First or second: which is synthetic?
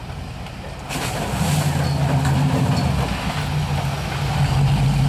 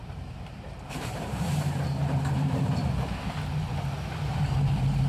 second